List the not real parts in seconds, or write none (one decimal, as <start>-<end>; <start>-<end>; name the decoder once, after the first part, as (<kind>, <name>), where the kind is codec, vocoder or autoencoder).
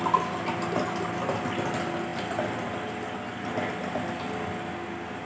none